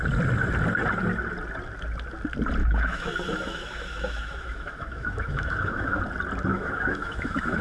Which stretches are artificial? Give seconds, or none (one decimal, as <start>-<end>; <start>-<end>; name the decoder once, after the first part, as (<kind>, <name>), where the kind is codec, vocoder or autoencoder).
2.6-6.0 (autoencoder, DAC-VAE); 6.5-7.6